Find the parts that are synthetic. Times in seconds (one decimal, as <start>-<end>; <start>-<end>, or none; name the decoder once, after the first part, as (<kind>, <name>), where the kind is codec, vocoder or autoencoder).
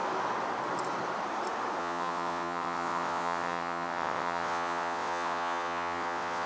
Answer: 1.8-6.5 (vocoder, WaveNeXt)